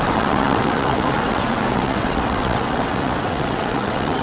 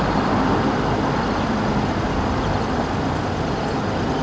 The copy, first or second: first